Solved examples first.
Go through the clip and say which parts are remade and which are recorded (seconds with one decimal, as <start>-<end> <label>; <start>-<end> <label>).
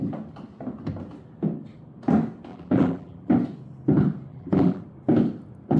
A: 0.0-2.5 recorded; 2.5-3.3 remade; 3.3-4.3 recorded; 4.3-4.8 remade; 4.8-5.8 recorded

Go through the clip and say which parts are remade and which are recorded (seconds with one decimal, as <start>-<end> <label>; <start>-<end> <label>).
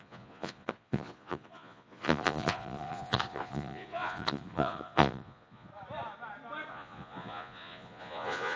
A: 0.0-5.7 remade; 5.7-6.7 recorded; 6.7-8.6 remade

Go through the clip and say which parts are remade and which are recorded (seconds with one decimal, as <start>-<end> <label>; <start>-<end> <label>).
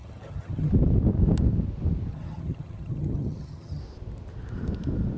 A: 0.0-0.7 remade; 0.7-2.1 recorded; 2.1-3.8 remade; 3.8-5.2 recorded